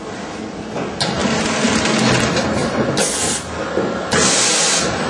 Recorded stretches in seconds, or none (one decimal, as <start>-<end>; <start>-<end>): 0.0-5.1